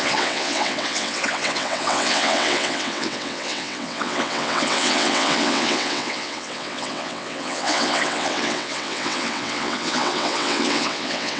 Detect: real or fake fake